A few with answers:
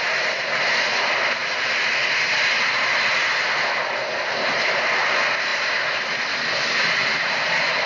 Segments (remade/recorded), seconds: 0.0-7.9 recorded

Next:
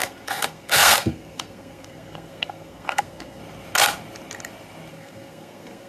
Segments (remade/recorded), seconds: 0.0-3.4 remade; 3.4-4.9 recorded; 4.9-5.9 remade